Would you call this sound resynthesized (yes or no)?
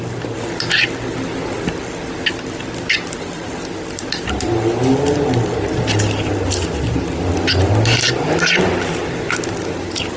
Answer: no